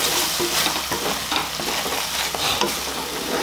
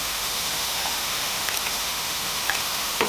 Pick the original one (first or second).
first